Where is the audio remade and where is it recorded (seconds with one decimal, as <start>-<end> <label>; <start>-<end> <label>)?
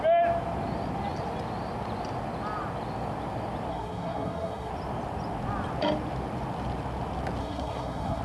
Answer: 0.0-3.7 recorded; 3.7-4.7 remade; 4.7-7.4 recorded; 7.4-8.2 remade